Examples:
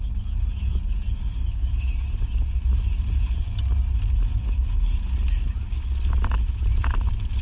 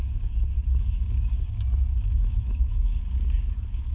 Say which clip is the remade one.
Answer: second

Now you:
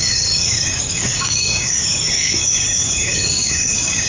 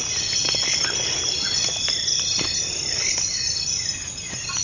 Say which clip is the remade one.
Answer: first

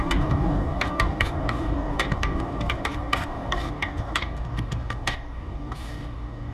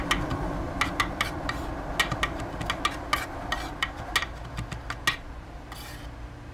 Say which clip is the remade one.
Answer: first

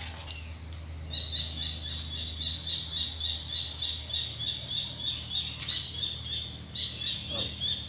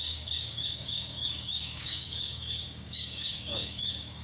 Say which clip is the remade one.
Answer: second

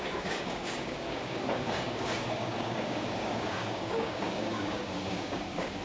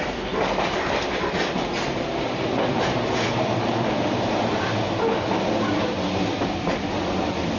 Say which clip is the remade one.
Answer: first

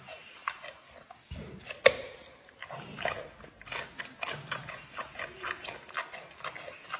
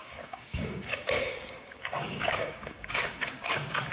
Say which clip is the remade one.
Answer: second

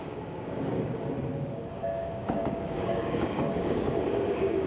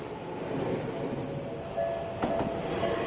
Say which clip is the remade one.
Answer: first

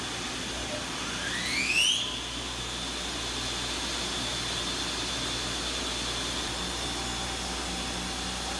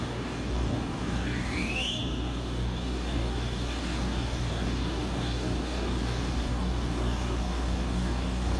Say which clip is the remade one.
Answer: second